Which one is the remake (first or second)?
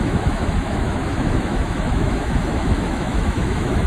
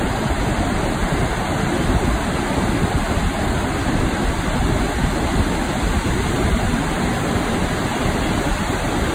first